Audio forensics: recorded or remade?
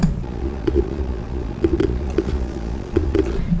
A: remade